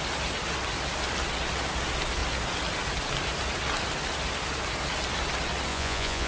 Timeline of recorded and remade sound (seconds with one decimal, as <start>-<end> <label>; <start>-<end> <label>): 0.0-5.7 recorded; 5.7-6.3 remade